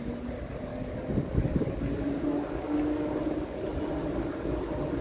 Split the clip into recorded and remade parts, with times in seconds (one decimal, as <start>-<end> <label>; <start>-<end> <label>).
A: 0.0-0.7 recorded; 0.7-3.6 remade; 3.6-4.0 recorded; 4.0-4.6 remade; 4.6-5.0 recorded